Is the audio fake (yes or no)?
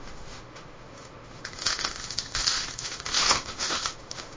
yes